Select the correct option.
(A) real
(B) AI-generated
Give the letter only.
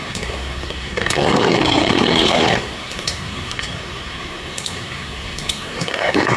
B